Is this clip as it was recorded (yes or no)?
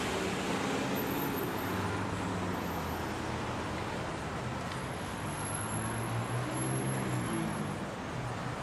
yes